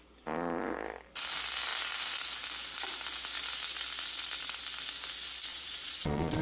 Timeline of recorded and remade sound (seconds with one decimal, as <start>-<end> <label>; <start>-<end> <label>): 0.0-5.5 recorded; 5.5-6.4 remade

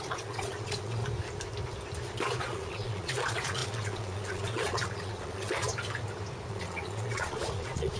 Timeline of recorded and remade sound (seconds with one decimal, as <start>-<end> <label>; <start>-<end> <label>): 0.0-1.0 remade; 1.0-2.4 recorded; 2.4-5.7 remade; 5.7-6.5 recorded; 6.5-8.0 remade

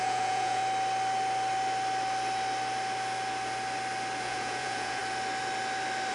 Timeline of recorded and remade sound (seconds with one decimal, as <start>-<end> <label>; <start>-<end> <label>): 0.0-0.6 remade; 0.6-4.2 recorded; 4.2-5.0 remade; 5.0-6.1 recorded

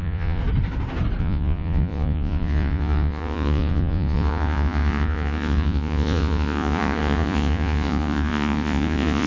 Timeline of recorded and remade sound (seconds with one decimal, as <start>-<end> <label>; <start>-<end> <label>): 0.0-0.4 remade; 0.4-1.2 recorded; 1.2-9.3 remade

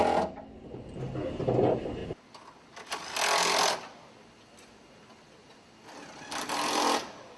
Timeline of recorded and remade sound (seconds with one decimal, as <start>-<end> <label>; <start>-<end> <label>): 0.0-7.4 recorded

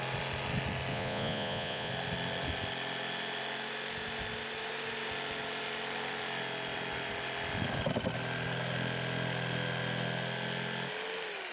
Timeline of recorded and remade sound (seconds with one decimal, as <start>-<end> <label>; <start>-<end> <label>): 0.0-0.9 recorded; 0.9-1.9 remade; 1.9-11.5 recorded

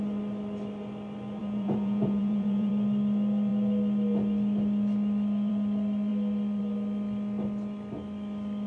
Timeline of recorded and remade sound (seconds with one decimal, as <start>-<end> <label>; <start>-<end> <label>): 0.0-1.4 recorded; 1.4-2.7 remade; 2.7-8.7 recorded